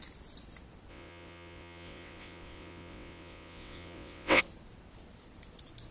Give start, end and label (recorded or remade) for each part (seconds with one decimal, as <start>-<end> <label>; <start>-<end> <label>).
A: 0.0-0.9 recorded; 0.9-4.4 remade; 4.4-5.9 recorded